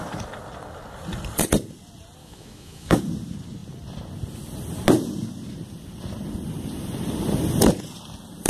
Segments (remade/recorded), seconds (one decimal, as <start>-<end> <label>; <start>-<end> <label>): 0.0-2.2 recorded; 2.2-3.0 remade; 3.0-8.5 recorded